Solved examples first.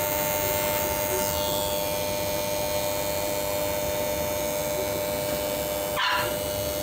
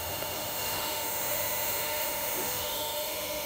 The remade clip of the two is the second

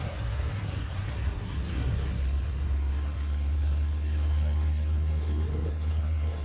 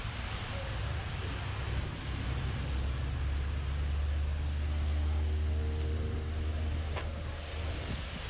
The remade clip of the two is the first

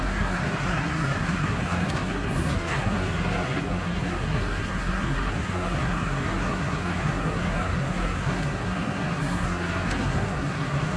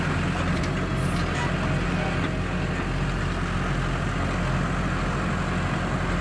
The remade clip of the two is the first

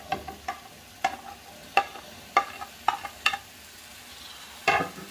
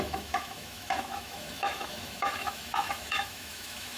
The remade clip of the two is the second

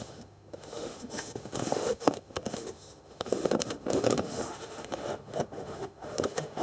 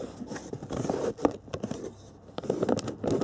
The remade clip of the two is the first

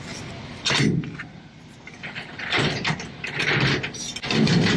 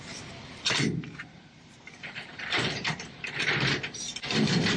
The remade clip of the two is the second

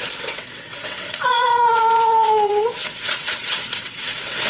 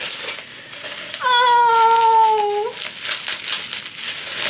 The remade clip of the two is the first